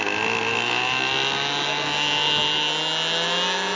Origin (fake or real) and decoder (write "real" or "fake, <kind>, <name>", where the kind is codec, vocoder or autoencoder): real